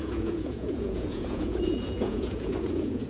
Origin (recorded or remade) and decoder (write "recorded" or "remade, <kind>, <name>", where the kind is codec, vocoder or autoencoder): remade, vocoder, Vocos